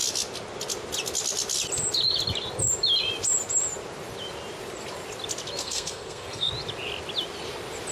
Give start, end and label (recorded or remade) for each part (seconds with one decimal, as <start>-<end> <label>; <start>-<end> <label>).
0.0-5.6 recorded; 5.6-6.5 remade; 6.5-7.9 recorded